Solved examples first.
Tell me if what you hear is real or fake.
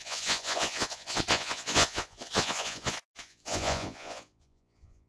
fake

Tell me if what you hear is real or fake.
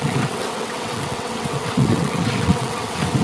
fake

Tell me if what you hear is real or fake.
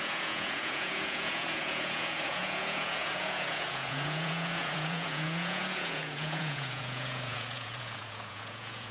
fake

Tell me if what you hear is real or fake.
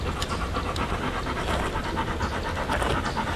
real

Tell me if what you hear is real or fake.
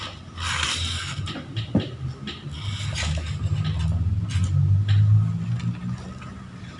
real